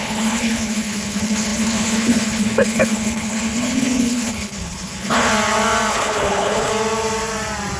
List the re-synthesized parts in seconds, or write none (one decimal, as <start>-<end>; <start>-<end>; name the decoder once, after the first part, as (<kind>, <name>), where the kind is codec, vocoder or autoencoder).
0.0-5.3 (codec, HILCodec); 5.9-6.7